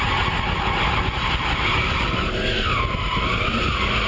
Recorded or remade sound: recorded